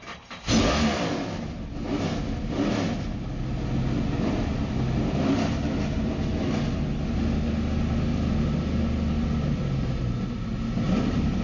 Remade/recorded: recorded